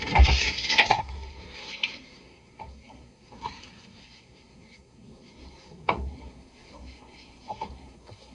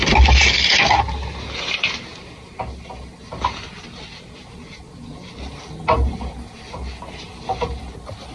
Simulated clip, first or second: first